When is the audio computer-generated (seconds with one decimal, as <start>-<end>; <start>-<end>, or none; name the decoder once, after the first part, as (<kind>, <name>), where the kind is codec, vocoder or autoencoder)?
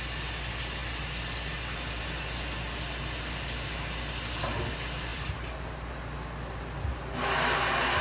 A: none